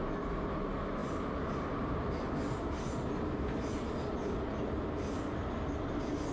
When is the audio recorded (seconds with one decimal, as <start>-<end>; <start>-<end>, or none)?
0.0-6.3